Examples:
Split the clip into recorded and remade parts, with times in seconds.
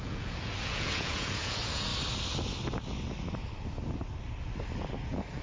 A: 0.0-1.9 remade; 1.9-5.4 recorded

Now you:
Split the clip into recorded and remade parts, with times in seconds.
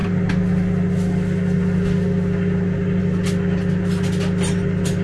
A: 0.0-5.0 recorded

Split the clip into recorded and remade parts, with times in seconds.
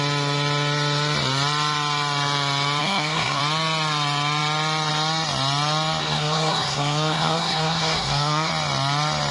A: 0.0-2.8 recorded; 2.8-3.4 remade; 3.4-6.0 recorded; 6.0-8.5 remade; 8.5-9.3 recorded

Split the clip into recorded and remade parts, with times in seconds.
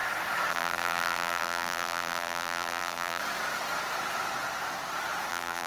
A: 0.0-0.5 recorded; 0.5-3.2 remade; 3.2-5.3 recorded; 5.3-5.7 remade